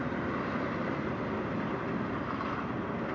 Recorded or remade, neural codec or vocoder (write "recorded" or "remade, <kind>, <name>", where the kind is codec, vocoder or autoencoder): recorded